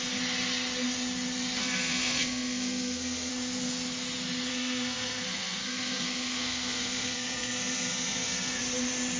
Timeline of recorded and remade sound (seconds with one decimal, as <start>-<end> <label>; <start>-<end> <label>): 0.0-1.6 recorded; 1.6-3.3 remade; 3.3-4.5 recorded; 4.5-8.6 remade; 8.6-9.2 recorded